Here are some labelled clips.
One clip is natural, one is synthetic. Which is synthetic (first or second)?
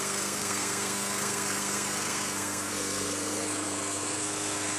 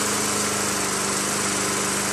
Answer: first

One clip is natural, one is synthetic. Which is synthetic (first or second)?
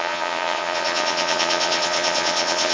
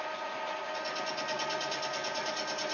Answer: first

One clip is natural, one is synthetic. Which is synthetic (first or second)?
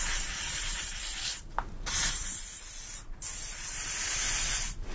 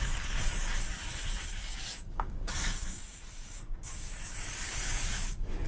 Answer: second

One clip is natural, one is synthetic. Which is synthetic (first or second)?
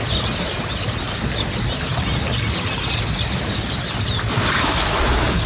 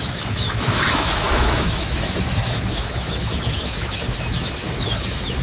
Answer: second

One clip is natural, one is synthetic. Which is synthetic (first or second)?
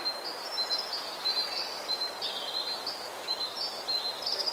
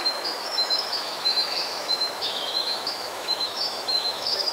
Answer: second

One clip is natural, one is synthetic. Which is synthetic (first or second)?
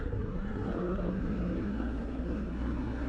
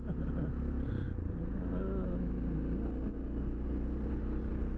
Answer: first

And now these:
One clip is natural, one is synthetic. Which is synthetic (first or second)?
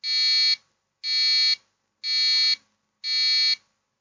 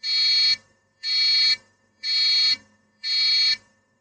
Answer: second